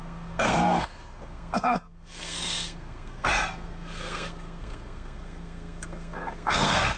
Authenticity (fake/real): fake